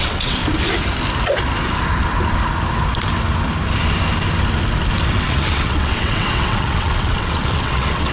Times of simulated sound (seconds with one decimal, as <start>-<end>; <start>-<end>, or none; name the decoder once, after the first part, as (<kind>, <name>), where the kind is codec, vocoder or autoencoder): 0.0-0.4 (vocoder, WaveNeXt); 5.1-8.1